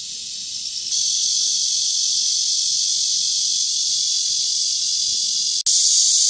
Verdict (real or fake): real